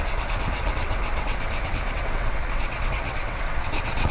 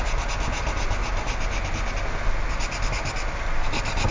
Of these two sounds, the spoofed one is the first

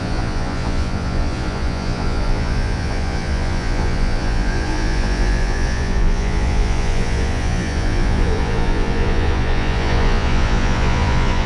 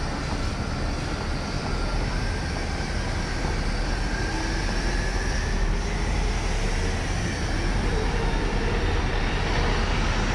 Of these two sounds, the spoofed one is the first